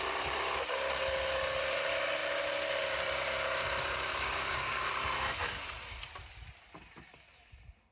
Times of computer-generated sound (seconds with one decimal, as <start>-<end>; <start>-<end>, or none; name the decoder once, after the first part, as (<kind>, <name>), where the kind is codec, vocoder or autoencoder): 4.1-4.9 (codec, DAC)